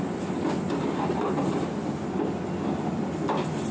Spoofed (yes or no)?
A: no